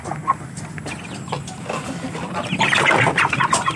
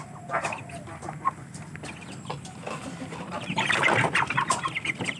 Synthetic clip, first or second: second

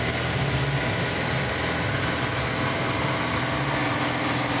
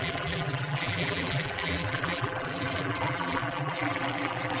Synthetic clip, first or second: second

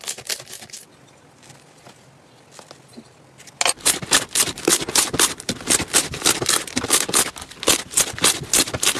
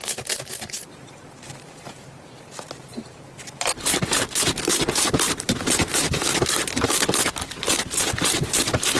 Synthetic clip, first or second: second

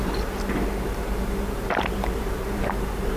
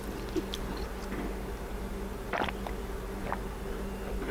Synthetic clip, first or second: first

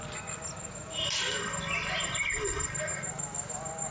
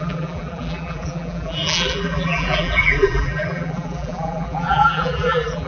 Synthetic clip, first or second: second